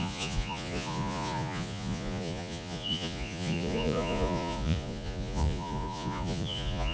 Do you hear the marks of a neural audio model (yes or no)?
yes